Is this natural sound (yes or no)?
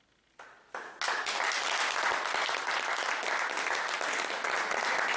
yes